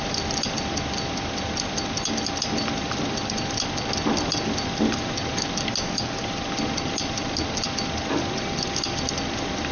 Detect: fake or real real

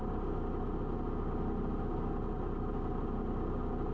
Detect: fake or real real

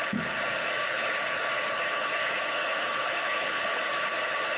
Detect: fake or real fake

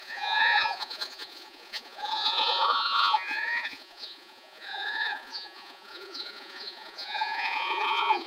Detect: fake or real fake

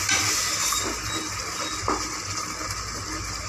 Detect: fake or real real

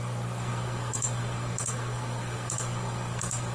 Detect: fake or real fake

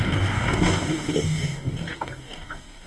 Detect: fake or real fake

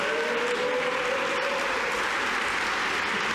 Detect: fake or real real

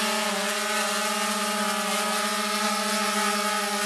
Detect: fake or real real